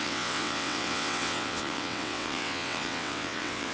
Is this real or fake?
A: fake